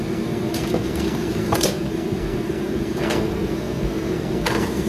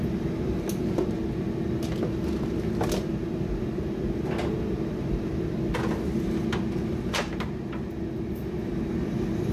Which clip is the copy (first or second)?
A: first